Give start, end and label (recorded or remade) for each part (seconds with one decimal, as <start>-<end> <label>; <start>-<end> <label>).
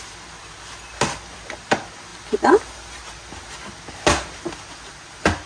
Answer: 0.0-5.5 recorded